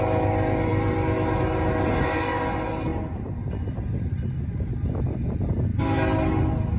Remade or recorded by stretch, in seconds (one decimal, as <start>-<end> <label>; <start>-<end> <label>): 0.0-6.8 recorded